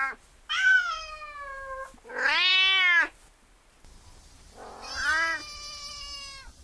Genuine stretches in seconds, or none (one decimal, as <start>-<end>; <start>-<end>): 0.0-6.6